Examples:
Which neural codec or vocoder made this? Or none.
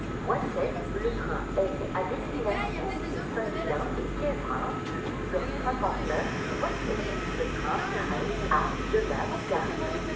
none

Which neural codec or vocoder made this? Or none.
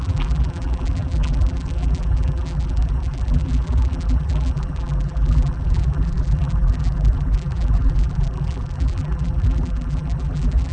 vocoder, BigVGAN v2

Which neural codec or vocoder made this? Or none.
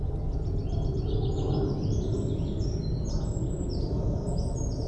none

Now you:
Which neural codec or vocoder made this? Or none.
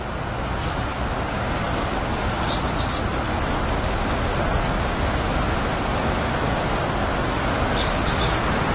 none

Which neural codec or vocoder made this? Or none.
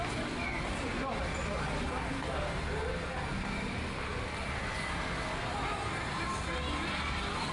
none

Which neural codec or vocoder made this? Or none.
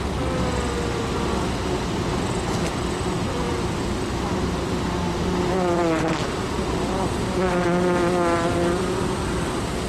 none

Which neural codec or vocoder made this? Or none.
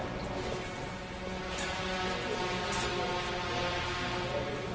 none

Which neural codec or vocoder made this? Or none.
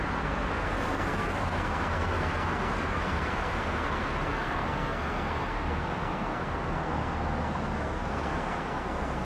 codec, SNAC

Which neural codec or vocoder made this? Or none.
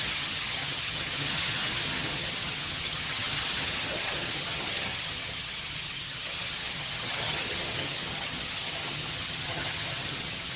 vocoder, HiFi-GAN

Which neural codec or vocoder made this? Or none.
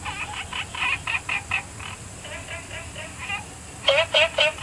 none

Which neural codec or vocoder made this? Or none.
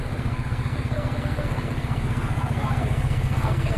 codec, SNAC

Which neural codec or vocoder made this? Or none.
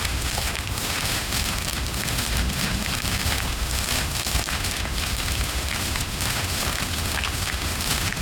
autoencoder, DAC-VAE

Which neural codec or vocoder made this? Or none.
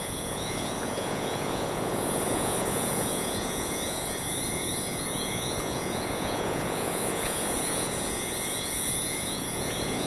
vocoder, Vocos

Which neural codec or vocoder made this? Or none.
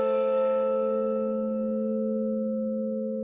autoencoder, DAC-VAE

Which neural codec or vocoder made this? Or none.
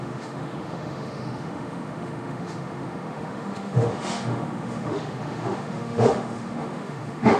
autoencoder, DAC-VAE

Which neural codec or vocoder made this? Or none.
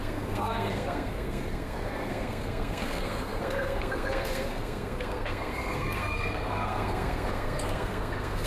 codec, SNAC